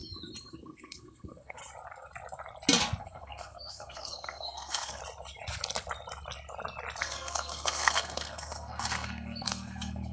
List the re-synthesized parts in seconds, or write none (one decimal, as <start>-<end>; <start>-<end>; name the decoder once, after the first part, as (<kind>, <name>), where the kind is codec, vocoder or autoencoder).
0.5-1.6 (codec, SNAC); 3.0-5.0; 7.0-10.1